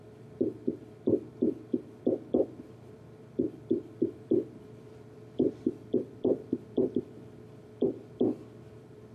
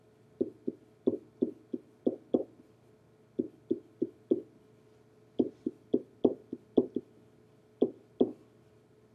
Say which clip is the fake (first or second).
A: first